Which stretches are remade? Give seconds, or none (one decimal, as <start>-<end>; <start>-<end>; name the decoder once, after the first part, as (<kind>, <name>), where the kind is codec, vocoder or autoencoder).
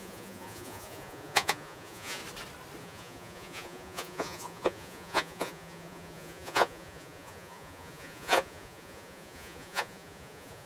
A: 0.0-2.2 (vocoder, Vocos); 2.8-10.7